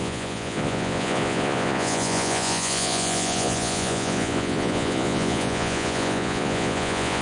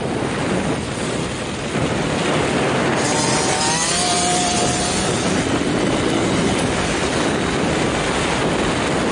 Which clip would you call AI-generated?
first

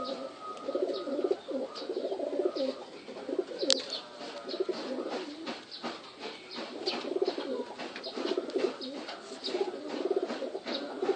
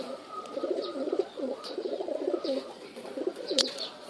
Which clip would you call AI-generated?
second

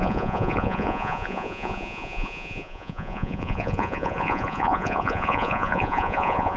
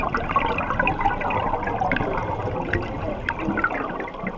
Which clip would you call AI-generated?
first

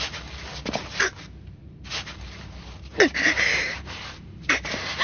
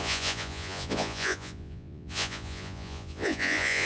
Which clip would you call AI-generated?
second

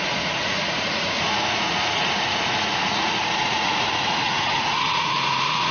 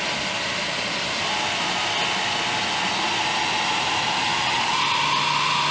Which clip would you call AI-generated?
first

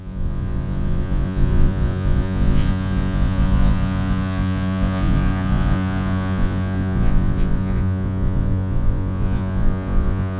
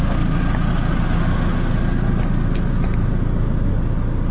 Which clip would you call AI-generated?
first